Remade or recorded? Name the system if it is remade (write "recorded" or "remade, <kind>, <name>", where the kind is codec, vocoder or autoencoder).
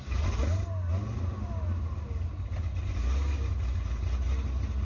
recorded